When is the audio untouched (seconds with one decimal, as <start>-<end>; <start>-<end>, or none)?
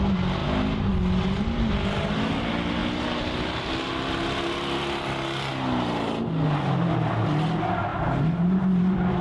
0.0-9.2